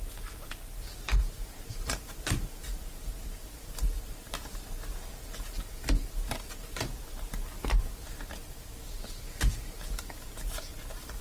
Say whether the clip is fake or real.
fake